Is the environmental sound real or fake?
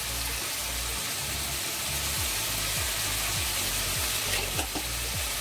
real